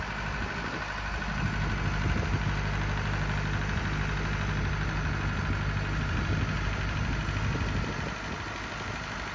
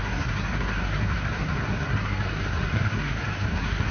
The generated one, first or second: second